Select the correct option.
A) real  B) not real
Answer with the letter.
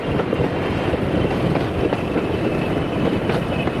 A